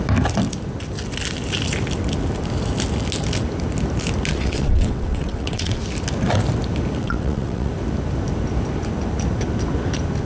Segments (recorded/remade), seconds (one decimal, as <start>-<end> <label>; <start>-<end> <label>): 0.0-4.3 recorded; 4.3-5.8 remade; 5.8-7.0 recorded; 7.0-7.7 remade; 7.7-10.3 recorded